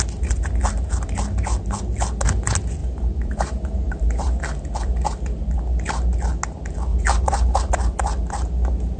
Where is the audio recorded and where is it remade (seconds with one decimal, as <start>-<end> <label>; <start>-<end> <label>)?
0.0-2.8 recorded; 2.8-4.4 remade; 4.4-6.9 recorded; 6.9-7.7 remade; 7.7-9.0 recorded